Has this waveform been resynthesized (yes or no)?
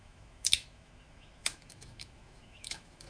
yes